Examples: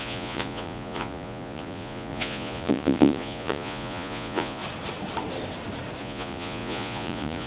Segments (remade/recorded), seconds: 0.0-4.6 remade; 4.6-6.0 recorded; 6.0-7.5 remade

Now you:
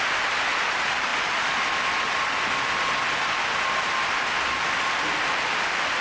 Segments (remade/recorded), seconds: 0.0-6.0 recorded